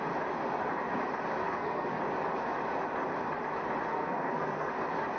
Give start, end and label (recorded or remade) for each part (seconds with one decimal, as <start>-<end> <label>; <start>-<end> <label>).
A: 0.0-1.4 recorded; 1.4-2.0 remade; 2.0-3.9 recorded; 3.9-4.7 remade; 4.7-5.2 recorded